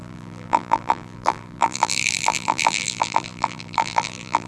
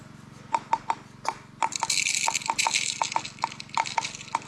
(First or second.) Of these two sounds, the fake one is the first